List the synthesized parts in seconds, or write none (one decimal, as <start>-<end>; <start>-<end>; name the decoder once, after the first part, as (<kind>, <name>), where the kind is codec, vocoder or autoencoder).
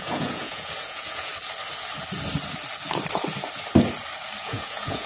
0.0-1.3 (vocoder, Vocos); 4.4-5.1